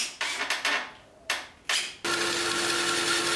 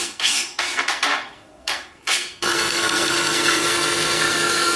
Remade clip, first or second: second